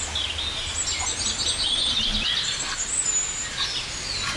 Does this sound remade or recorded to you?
recorded